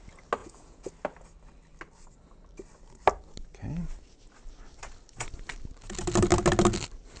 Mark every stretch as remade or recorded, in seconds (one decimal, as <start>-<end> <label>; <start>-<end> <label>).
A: 0.0-0.4 recorded; 0.4-0.9 remade; 0.9-7.2 recorded

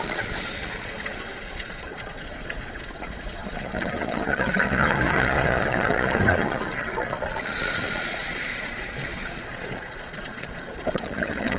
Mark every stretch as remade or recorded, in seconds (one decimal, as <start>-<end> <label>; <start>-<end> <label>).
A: 0.0-11.6 remade

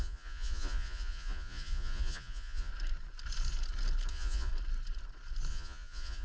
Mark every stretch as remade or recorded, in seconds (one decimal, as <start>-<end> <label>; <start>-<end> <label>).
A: 0.0-2.7 remade; 2.7-4.1 recorded; 4.1-4.5 remade; 4.5-5.5 recorded; 5.5-6.2 remade

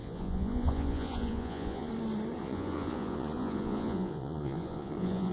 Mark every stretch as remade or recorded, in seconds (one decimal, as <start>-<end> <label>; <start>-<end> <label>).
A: 0.0-1.9 remade; 1.9-2.4 recorded; 2.4-5.3 remade

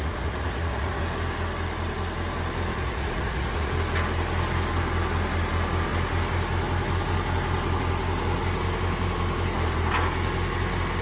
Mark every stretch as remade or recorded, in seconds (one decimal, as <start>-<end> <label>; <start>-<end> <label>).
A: 0.0-1.0 remade; 1.0-2.7 recorded; 2.7-3.7 remade; 3.7-11.0 recorded

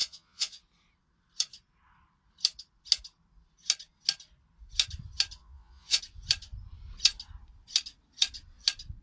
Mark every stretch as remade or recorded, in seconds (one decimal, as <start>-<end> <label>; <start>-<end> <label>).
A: 0.0-0.6 remade; 0.6-5.4 recorded; 5.4-6.0 remade; 6.0-9.0 recorded

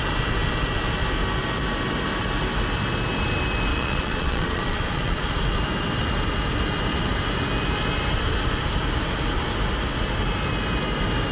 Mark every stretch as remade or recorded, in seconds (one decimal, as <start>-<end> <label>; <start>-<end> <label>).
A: 0.0-3.7 recorded; 3.7-5.3 remade; 5.3-11.3 recorded

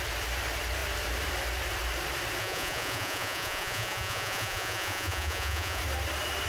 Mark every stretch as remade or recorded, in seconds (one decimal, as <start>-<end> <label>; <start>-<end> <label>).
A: 0.0-2.4 recorded; 2.4-5.8 remade; 5.8-6.5 recorded